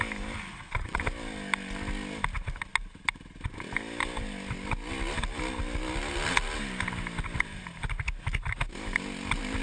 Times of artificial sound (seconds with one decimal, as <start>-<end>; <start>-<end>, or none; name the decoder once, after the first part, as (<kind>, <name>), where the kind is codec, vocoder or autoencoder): 0.5-1.0 (vocoder, WaveNeXt)